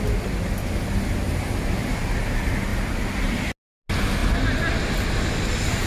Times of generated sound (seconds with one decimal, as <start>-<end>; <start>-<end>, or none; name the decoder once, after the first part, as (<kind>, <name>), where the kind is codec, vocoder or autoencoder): none